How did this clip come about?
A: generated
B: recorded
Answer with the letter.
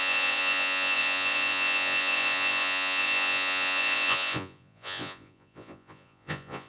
A